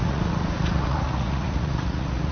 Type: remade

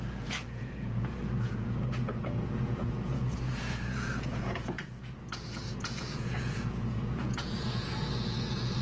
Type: remade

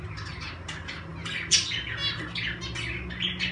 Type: recorded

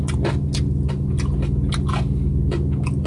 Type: recorded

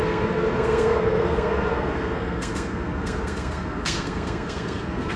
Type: remade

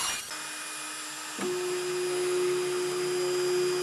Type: recorded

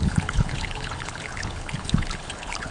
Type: remade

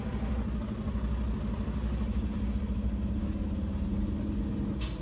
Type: recorded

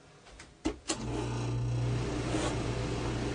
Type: recorded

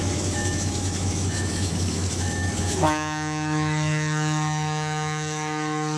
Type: remade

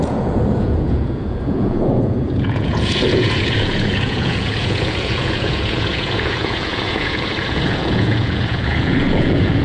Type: remade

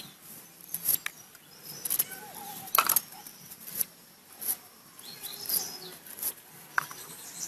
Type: recorded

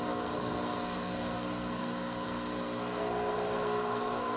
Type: remade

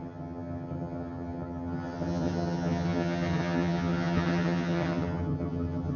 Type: remade